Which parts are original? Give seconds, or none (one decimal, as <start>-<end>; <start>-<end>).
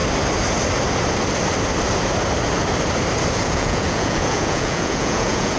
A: 0.0-3.4